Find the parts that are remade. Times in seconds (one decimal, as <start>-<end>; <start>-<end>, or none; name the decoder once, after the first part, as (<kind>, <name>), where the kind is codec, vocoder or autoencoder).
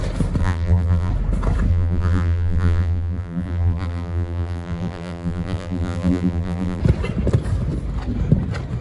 0.4-1.1 (vocoder, BigVGAN v2); 1.7-6.8